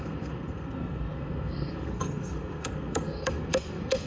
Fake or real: fake